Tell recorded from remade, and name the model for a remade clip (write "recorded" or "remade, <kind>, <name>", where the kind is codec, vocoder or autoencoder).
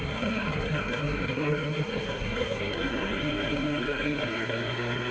remade, codec, SNAC